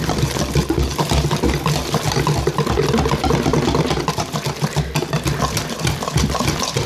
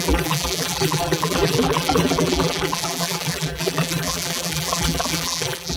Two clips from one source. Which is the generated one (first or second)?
second